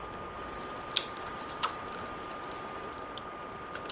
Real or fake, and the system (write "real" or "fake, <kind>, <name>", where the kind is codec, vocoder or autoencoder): fake, vocoder, BigVGAN v2